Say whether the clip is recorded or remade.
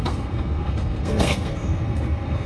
remade